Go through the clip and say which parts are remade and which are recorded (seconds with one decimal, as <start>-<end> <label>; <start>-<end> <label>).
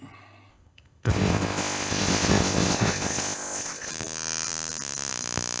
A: 0.0-0.5 recorded; 0.5-3.9 remade; 3.9-5.6 recorded